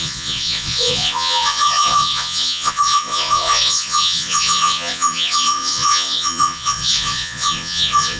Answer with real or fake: fake